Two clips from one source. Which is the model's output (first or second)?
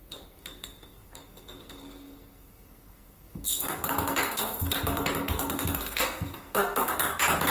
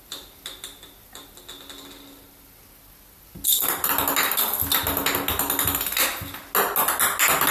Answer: first